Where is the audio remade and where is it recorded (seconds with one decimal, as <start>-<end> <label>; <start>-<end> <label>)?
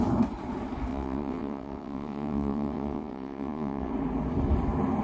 0.0-0.9 recorded; 0.9-3.9 remade; 3.9-5.0 recorded